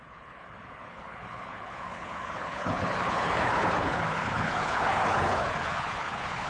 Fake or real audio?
fake